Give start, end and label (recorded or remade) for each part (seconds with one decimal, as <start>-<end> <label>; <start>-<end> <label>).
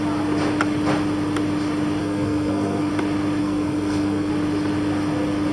0.0-2.0 recorded; 2.0-2.9 remade; 2.9-3.4 recorded; 3.4-4.3 remade; 4.3-5.5 recorded